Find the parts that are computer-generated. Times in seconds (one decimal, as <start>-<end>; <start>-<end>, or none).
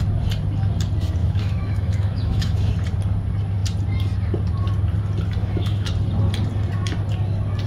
1.2-2.7; 5.4-5.9